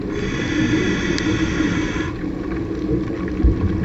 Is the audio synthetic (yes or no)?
no